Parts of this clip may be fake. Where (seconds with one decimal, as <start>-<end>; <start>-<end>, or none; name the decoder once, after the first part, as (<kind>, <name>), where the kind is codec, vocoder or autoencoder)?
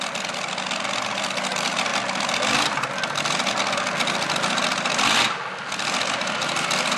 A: none